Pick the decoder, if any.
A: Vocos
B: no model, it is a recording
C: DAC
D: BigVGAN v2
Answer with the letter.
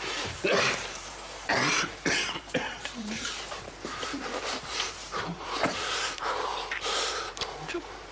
D